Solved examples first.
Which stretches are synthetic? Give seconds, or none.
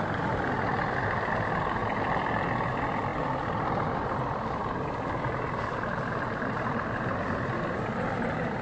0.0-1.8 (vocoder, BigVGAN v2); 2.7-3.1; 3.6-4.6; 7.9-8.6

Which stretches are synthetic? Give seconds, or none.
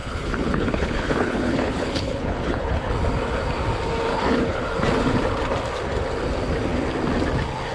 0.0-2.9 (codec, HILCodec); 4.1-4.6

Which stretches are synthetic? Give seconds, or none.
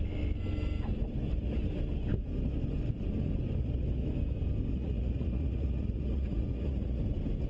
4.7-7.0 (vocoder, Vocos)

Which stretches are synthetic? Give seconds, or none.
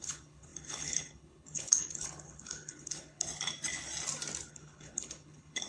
0.0-3.3 (codec, HILCodec); 4.5-5.7